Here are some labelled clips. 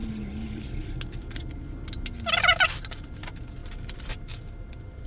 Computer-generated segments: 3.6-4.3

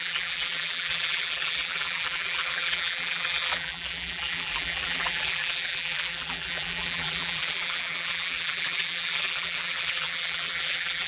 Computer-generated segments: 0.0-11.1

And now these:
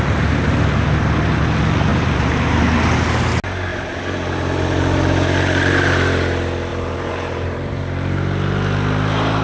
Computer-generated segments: 1.9-2.6; 6.7-7.8

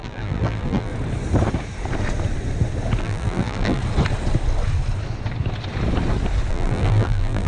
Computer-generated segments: 0.0-0.9; 3.0-3.8; 6.5-7.5

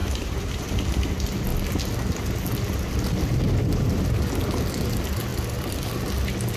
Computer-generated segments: 0.0-0.6